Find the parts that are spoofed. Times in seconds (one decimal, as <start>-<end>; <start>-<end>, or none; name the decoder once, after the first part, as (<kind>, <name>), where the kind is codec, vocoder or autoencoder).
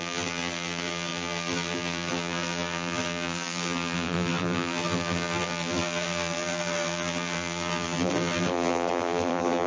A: 0.0-9.7 (vocoder, BigVGAN v2)